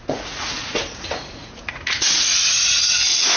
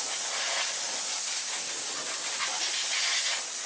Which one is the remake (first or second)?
first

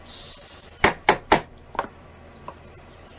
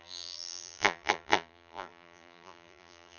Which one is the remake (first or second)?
second